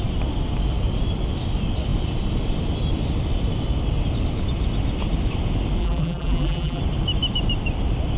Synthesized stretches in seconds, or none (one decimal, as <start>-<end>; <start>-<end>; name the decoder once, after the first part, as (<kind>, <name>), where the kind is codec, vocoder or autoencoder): 5.8-6.8 (vocoder, BigVGAN v2)